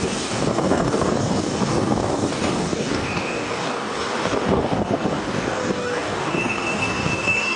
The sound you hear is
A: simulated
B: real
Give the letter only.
A